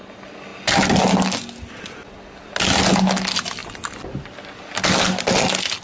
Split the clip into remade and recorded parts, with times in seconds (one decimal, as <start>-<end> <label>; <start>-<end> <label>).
0.0-5.8 recorded